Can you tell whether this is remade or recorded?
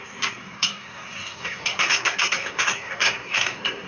remade